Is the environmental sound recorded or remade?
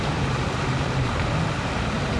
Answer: remade